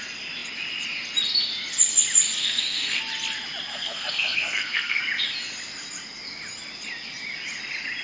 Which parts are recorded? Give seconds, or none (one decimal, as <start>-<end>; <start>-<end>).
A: 0.0-2.4; 3.0-3.7; 5.0-8.0